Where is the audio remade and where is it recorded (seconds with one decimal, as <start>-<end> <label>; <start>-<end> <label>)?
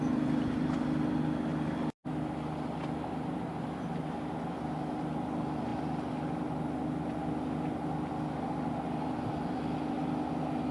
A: 0.0-10.7 recorded